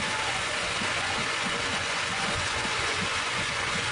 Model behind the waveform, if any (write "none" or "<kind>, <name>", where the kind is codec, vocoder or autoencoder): vocoder, Vocos